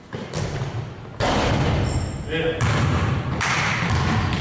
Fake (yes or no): no